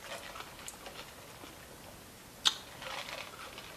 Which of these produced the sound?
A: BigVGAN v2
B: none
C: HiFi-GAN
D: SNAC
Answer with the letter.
B